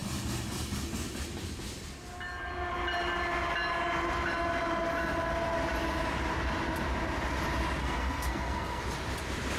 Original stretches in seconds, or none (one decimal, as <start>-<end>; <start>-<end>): 0.0-7.8; 8.8-9.6